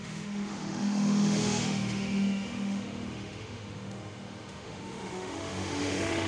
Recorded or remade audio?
remade